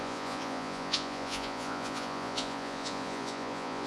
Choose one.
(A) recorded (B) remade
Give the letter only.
B